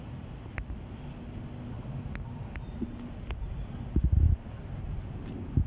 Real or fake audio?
real